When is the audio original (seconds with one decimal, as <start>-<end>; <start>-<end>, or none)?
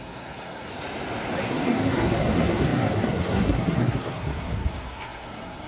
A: 0.7-1.4